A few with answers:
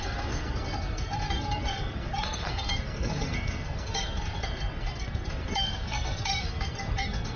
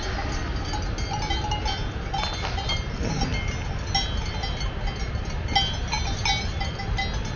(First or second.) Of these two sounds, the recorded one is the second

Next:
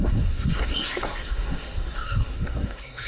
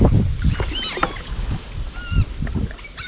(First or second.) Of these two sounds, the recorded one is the second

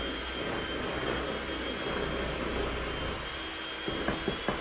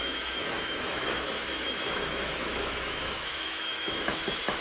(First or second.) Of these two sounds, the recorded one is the first